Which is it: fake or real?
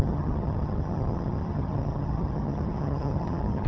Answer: fake